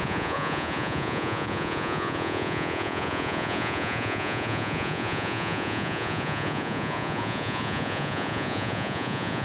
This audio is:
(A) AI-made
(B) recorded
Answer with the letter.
A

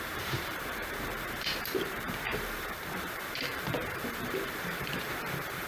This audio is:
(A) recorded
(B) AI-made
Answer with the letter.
B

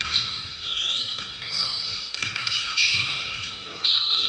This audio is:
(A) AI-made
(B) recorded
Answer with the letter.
A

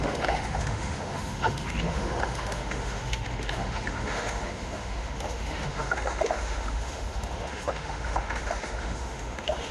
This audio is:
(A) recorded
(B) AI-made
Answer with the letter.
B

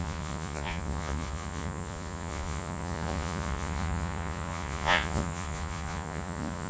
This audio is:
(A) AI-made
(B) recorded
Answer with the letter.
A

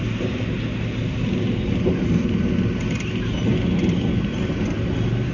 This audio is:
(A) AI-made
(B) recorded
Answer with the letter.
B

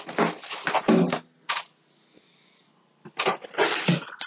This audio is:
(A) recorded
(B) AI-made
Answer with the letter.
A